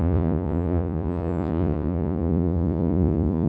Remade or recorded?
remade